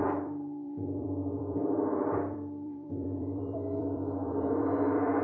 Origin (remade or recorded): remade